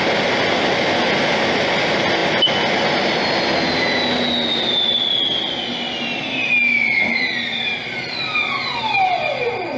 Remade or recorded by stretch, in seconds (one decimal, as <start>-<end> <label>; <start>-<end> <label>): 0.0-9.8 recorded